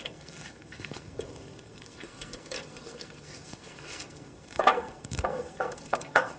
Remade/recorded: remade